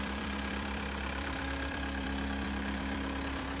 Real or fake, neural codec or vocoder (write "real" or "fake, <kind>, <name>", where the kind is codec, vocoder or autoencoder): fake, vocoder, BigVGAN v2